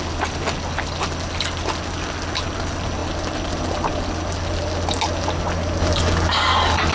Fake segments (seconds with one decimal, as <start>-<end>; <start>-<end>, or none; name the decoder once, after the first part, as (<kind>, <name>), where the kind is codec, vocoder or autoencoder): none